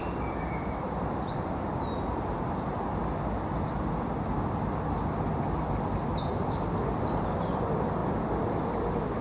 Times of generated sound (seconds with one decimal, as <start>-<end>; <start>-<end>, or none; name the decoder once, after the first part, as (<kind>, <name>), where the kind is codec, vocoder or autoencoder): 0.0-1.8 (vocoder, BigVGAN v2); 8.0-9.2